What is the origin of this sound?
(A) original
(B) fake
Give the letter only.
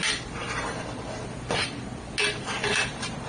A